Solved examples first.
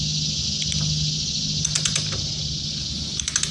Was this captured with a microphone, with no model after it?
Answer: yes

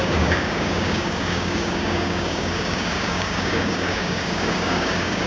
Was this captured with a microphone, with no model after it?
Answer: no